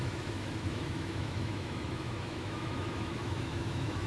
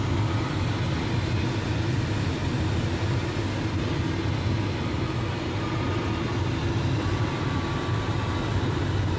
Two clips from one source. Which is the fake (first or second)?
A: first